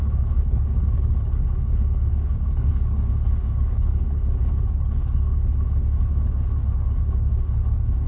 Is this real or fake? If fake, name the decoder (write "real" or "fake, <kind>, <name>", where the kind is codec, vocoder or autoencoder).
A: fake, codec, HILCodec